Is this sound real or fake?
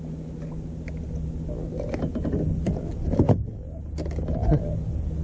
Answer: real